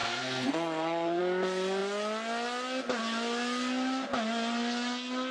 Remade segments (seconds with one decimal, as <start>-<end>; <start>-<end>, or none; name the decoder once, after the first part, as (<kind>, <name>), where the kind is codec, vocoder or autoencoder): 0.0-1.2 (codec, SNAC)